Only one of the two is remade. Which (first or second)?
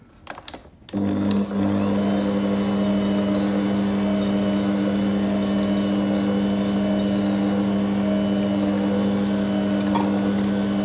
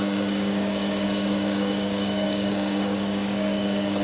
second